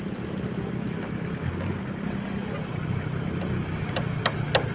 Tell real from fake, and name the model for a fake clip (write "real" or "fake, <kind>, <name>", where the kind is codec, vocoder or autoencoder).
real